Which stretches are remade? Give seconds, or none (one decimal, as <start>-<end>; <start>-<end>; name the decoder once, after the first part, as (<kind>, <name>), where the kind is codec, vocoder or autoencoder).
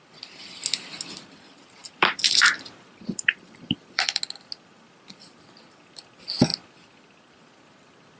1.8-4.2 (vocoder, BigVGAN v2)